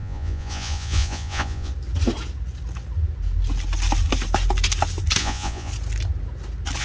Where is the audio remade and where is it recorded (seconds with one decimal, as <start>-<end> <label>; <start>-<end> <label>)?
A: 0.0-1.7 remade; 1.7-5.2 recorded; 5.2-5.7 remade; 5.7-6.8 recorded